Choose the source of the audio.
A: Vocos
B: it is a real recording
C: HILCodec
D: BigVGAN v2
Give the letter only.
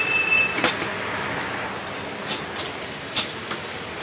B